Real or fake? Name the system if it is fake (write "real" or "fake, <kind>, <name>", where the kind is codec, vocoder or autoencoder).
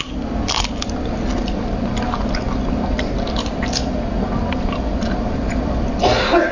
real